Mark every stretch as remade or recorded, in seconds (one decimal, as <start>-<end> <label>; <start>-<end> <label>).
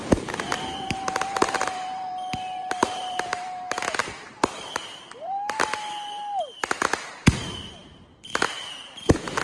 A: 0.0-2.1 remade; 2.1-2.6 recorded; 2.6-5.5 remade; 5.5-9.4 recorded